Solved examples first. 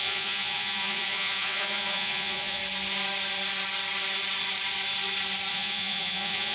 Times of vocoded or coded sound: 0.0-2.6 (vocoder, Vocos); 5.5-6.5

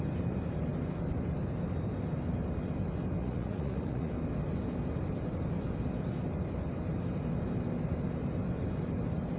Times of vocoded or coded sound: 3.2-4.1 (vocoder, Vocos)